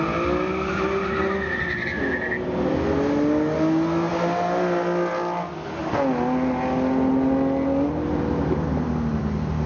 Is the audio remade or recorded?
recorded